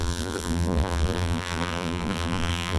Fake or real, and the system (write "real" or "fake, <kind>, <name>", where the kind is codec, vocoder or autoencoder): fake, vocoder, BigVGAN v2